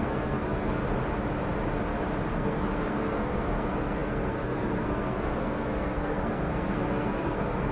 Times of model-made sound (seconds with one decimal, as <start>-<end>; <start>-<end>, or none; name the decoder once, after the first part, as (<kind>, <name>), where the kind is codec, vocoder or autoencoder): 0.0-0.8 (codec, SNAC); 2.3-7.7